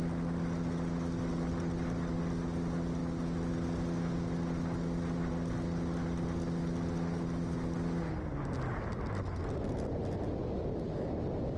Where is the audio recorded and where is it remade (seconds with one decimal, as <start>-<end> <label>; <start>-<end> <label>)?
0.0-11.6 recorded